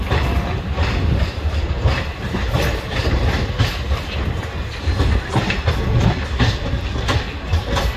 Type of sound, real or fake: real